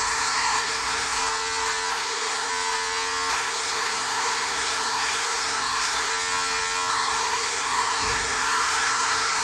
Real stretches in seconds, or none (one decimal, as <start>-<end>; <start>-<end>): 1.2-1.9; 2.5-3.3; 6.1-6.9

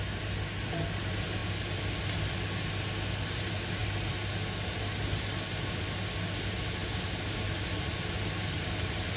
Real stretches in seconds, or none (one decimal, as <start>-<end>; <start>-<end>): 0.0-9.2

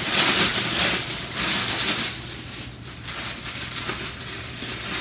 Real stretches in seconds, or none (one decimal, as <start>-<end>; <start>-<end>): 0.0-5.0

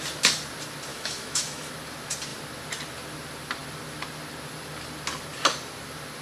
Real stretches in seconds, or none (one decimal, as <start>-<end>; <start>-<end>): 0.0-0.9; 1.7-6.2

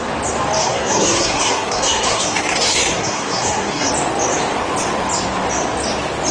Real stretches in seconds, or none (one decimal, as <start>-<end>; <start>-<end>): 0.0-0.6; 3.9-6.3

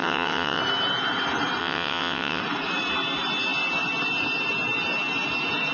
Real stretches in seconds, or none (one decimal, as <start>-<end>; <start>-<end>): 0.6-1.6; 2.4-5.7

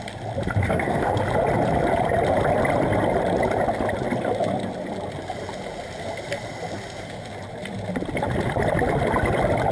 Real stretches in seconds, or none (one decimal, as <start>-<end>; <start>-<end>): 0.0-0.6; 1.2-9.7

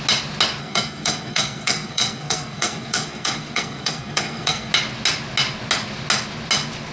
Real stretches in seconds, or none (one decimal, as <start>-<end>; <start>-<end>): 0.0-0.6; 4.7-6.9